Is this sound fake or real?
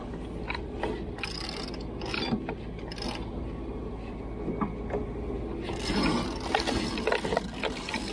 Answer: real